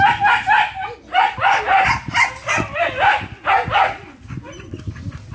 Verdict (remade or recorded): recorded